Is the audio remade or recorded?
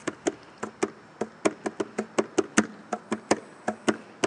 recorded